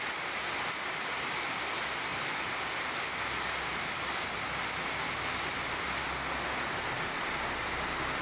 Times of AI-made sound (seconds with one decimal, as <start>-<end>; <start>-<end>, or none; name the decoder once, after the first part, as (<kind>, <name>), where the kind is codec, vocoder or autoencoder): none